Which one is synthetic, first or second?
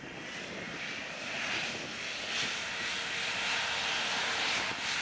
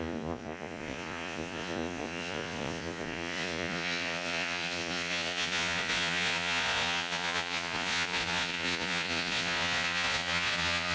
second